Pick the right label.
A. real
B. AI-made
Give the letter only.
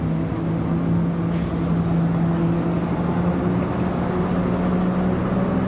A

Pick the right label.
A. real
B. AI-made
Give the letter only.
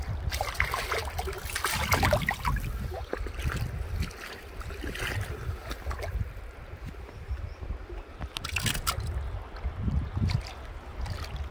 A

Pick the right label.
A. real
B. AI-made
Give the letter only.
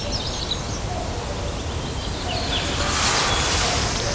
A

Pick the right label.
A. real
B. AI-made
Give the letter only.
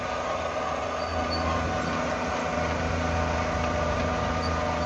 A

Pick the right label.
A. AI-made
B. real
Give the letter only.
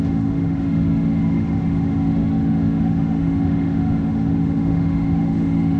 A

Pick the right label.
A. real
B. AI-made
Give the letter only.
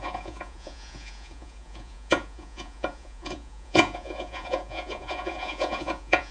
B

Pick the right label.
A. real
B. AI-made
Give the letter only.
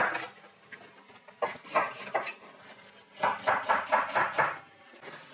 A